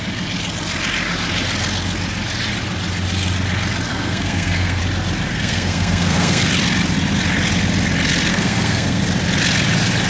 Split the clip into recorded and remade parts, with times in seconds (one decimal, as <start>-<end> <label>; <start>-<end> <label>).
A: 0.0-3.9 recorded; 3.9-4.8 remade; 4.8-5.3 recorded; 5.3-6.5 remade; 6.5-8.3 recorded; 8.3-9.0 remade; 9.0-10.1 recorded